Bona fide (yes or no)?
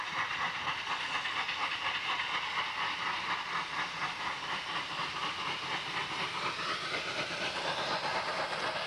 yes